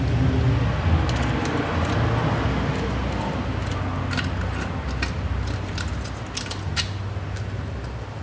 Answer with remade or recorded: recorded